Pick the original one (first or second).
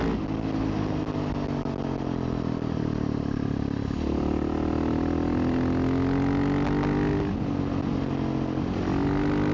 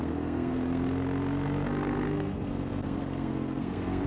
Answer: first